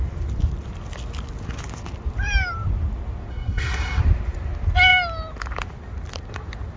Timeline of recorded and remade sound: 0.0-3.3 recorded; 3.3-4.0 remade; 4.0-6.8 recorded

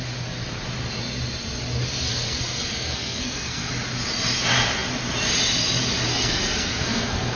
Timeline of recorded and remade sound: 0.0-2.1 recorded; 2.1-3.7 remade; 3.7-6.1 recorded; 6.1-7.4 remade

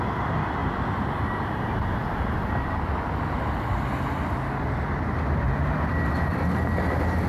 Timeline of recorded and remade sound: 0.0-7.3 recorded

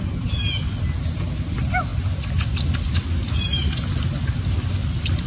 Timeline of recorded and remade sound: 0.0-5.3 recorded

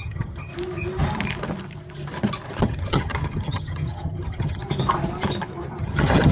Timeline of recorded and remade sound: 0.0-0.5 remade; 0.5-2.6 recorded; 2.6-4.6 remade; 4.6-5.8 recorded; 5.8-6.3 remade

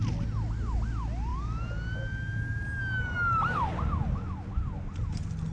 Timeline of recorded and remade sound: 0.0-5.5 recorded

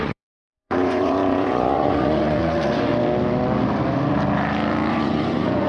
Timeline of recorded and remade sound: 0.0-2.9 remade; 2.9-4.9 recorded; 4.9-5.7 remade

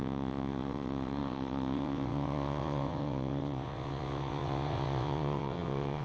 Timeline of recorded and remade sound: 0.0-6.0 remade